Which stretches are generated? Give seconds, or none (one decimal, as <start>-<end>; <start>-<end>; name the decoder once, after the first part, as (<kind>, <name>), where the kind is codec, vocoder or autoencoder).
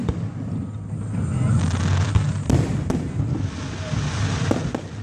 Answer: none